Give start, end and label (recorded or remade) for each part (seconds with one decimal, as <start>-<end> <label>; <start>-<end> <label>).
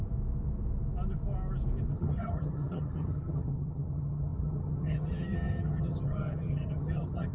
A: 0.0-1.9 recorded; 1.9-7.3 remade